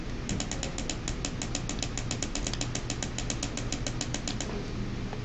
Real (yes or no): yes